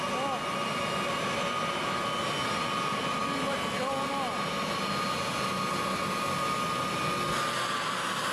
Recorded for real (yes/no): yes